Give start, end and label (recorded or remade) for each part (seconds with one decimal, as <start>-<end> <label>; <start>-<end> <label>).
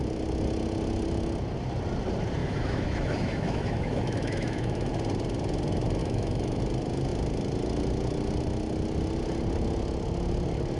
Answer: 0.0-2.4 recorded; 2.4-4.9 remade; 4.9-6.0 recorded; 6.0-6.6 remade; 6.6-10.8 recorded